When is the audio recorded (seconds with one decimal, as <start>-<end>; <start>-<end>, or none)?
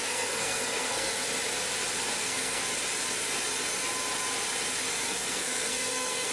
1.1-2.2; 2.6-5.1